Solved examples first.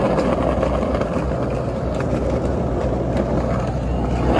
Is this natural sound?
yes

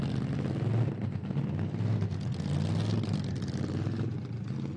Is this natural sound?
yes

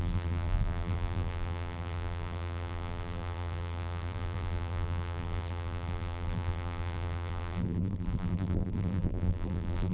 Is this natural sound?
no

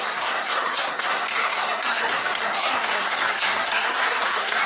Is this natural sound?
no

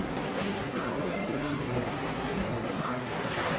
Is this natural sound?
no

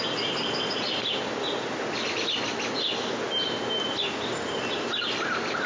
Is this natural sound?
yes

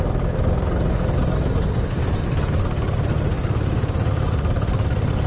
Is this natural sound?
yes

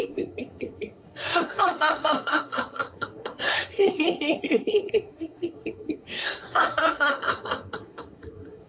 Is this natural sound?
no